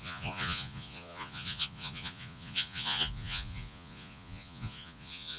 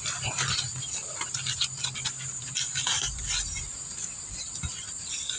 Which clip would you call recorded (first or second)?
second